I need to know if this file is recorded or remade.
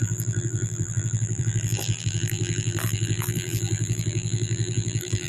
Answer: remade